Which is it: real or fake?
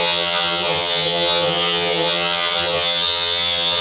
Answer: fake